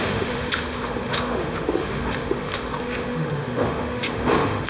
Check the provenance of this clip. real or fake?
fake